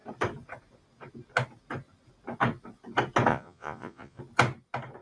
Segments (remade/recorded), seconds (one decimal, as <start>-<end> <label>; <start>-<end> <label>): 0.0-3.3 recorded; 3.3-4.2 remade; 4.2-5.0 recorded